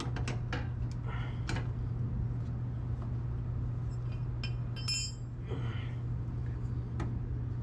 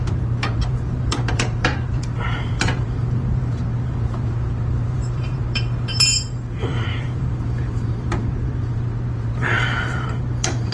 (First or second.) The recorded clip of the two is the first